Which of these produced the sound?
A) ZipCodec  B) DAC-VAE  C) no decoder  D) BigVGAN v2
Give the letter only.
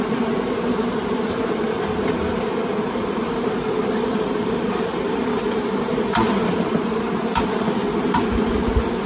D